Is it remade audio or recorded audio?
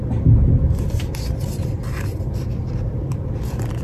recorded